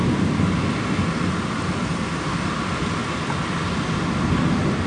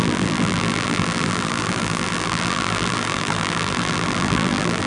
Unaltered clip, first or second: first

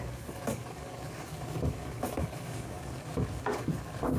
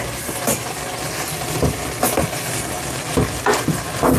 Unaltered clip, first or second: second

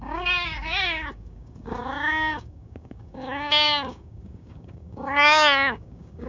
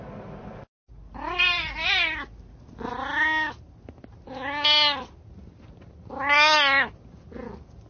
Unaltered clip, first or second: second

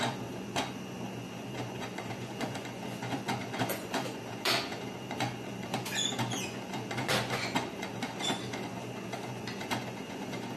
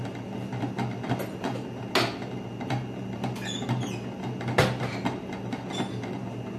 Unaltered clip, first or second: second